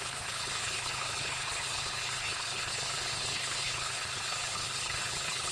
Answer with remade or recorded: remade